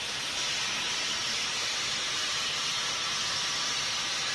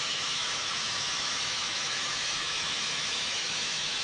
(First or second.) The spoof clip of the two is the second